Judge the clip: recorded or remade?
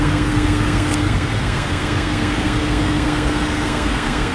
remade